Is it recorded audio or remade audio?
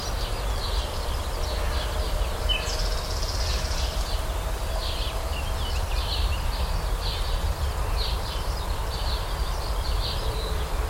recorded